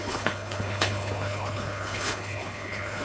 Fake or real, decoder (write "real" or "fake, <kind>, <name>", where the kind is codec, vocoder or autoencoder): fake, codec, HILCodec